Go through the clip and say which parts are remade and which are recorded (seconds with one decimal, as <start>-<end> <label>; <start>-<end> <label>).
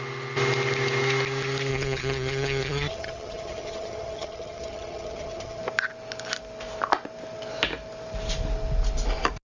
0.0-1.7 recorded; 1.7-5.6 remade; 5.6-9.4 recorded